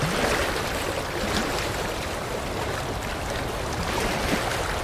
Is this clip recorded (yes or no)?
yes